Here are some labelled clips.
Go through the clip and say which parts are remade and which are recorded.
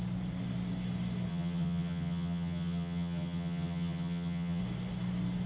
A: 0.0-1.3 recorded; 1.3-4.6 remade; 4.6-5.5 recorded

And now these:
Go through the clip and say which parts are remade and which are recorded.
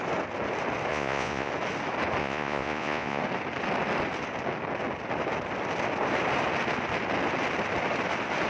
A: 0.0-0.9 recorded; 0.9-1.5 remade; 1.5-2.2 recorded; 2.2-3.2 remade; 3.2-8.5 recorded